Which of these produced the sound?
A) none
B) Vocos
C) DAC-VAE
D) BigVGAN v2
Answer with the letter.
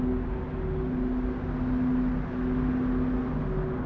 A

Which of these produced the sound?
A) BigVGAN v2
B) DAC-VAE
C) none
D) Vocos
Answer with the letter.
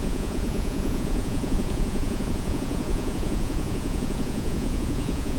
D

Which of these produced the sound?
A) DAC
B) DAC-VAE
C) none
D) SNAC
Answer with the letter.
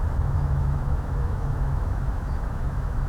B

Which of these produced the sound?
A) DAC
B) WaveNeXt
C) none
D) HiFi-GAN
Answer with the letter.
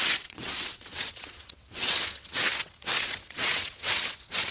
B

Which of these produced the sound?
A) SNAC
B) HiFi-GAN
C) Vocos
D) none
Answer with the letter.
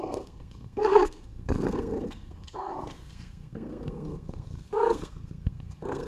A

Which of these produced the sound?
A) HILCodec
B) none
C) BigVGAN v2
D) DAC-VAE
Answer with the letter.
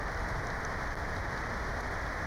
B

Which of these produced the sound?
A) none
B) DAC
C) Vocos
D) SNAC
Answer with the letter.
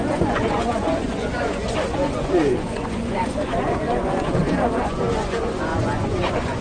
C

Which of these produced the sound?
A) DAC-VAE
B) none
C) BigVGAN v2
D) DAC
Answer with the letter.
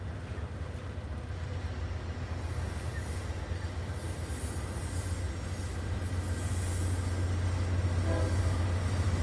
B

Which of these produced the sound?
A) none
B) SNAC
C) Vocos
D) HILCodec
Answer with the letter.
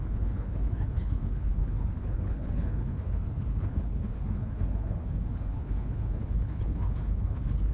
D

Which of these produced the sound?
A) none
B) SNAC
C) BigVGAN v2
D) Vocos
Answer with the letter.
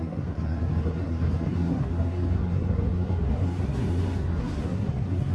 B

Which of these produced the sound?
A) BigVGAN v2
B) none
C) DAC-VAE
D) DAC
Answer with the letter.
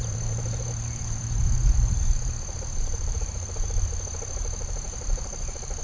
A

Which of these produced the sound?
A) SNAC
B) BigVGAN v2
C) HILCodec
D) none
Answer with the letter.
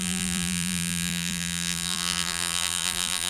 B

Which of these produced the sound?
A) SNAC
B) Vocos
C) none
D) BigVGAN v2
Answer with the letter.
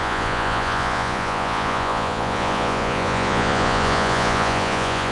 B